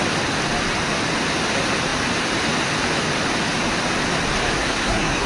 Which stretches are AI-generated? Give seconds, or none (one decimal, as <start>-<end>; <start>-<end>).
4.6-5.3